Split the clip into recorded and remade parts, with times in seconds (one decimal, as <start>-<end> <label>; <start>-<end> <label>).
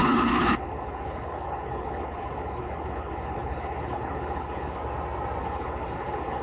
0.0-4.8 remade; 4.8-5.4 recorded; 5.4-6.4 remade